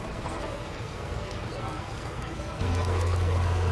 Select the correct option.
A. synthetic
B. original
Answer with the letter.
A